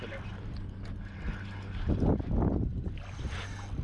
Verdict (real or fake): real